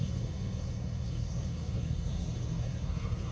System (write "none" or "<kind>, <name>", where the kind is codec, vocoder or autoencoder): codec, SNAC